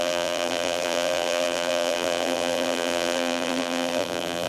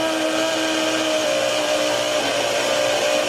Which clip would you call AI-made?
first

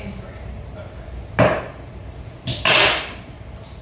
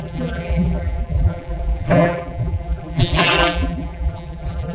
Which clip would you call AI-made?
second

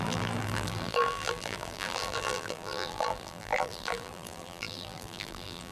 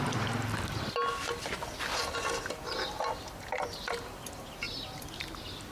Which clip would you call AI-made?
first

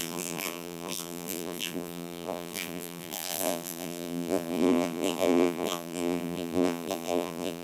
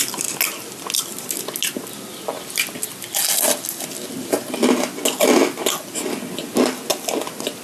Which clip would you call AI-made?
first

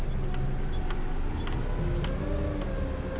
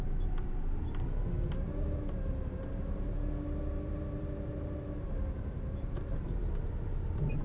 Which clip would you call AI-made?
second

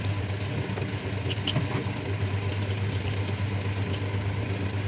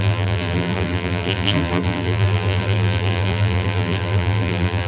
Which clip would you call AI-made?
second